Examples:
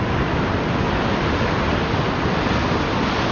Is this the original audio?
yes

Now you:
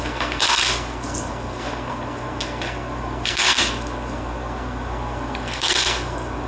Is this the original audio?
no